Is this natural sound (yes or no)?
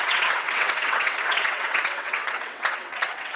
no